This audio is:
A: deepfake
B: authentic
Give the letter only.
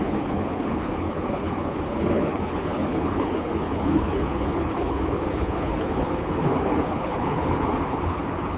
A